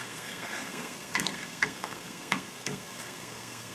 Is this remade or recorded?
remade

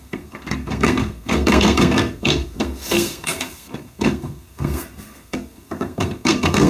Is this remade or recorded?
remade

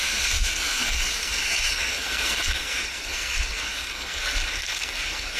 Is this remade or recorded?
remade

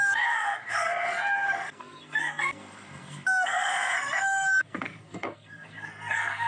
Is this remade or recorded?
remade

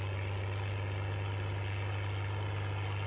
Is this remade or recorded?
recorded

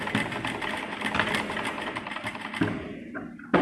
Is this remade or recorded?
recorded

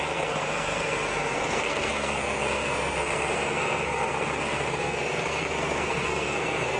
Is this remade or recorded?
remade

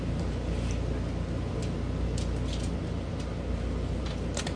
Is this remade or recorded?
recorded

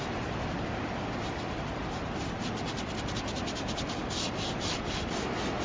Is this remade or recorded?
recorded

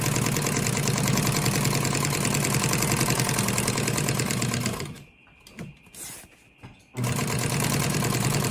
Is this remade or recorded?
recorded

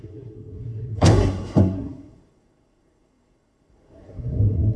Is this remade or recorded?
remade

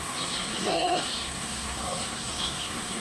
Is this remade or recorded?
remade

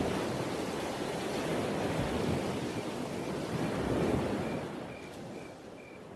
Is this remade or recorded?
recorded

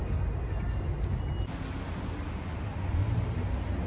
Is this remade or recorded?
recorded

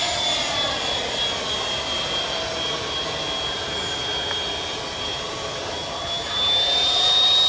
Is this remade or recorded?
recorded